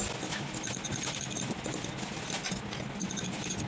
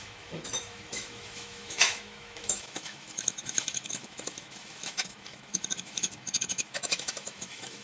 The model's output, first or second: second